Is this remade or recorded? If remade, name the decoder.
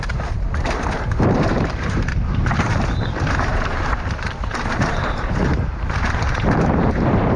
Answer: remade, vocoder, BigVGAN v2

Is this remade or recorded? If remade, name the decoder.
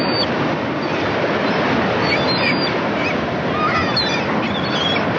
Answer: recorded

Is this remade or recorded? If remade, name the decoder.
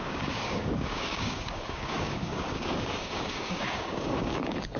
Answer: remade, codec, DAC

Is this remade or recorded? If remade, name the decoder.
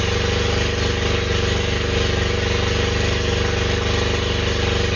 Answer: recorded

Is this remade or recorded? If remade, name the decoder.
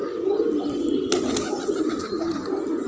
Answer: recorded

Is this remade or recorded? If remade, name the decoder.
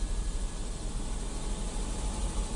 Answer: recorded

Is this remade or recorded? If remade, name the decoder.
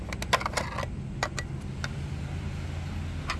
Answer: recorded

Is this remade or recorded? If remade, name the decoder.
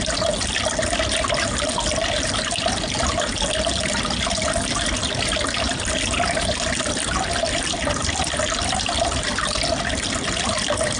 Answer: recorded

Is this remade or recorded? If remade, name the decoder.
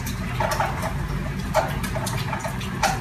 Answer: recorded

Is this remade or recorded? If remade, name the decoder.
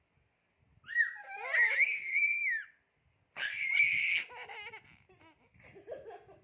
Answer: recorded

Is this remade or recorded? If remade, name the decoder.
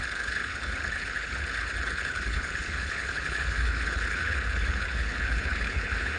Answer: remade, codec, HILCodec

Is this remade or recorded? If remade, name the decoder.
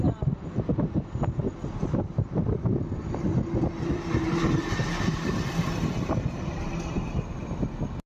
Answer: recorded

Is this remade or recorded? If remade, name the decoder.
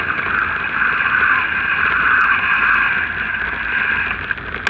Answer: recorded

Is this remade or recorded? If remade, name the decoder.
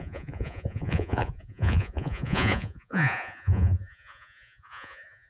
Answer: remade, vocoder, Vocos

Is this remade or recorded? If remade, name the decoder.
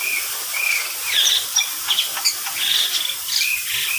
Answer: recorded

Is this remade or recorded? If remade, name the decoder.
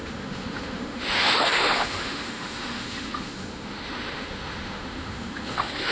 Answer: remade, autoencoder, DAC-VAE